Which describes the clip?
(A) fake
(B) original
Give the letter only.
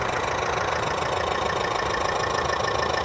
B